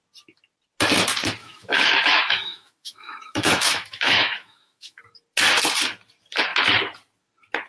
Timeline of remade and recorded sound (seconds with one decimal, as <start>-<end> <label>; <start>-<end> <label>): 0.0-1.4 recorded; 1.4-5.0 remade; 5.0-7.7 recorded